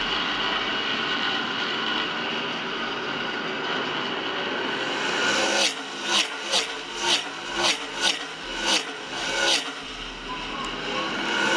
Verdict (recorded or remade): recorded